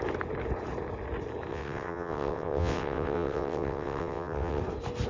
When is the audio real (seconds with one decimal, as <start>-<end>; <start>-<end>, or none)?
0.0-1.5; 4.6-5.1